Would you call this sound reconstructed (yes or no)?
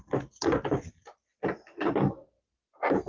no